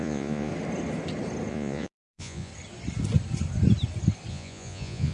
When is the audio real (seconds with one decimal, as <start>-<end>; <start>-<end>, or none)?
0.5-1.5; 2.5-4.3